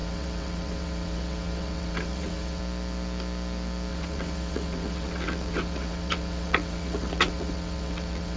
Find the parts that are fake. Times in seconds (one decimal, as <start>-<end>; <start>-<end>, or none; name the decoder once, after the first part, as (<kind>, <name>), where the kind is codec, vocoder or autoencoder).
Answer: 0.0-2.6 (vocoder, WaveNeXt); 3.9-8.4